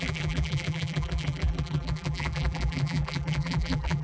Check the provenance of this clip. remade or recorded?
remade